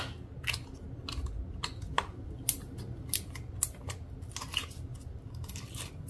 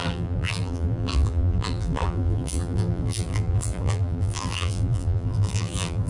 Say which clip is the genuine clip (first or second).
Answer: first